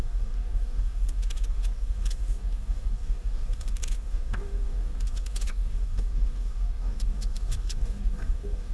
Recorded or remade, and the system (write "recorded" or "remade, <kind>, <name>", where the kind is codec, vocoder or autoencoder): remade, codec, DAC